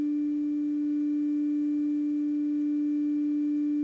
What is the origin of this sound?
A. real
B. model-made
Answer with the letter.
A